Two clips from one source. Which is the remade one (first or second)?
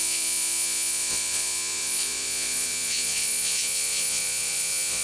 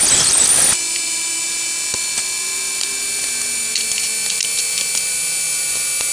first